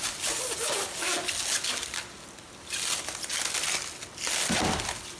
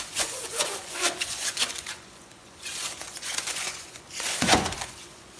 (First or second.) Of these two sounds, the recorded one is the first